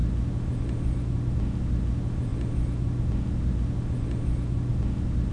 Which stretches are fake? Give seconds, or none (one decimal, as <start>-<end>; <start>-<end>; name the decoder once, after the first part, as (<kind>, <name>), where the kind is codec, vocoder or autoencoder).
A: none